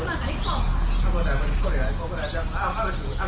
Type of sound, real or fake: real